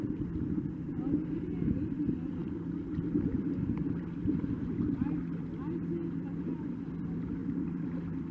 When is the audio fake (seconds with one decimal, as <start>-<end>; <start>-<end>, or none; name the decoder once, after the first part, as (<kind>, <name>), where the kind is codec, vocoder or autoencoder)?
2.4-4.4 (vocoder, BigVGAN v2); 6.0-6.7; 7.4-8.3